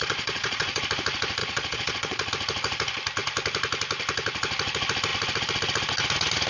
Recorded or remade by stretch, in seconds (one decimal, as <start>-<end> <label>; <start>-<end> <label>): 0.0-0.8 remade; 0.8-1.4 recorded; 1.4-2.3 remade; 2.3-6.5 recorded